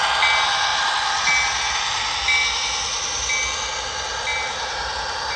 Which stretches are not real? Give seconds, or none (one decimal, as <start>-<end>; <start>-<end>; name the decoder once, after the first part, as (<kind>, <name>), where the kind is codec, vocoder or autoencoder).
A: 4.3-5.4 (vocoder, BigVGAN v2)